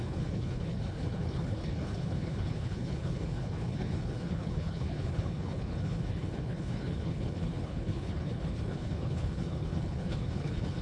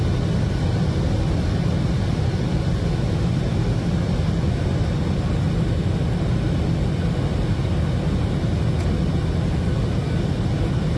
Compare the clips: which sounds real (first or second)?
second